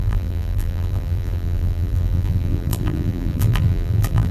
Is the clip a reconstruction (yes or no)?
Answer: yes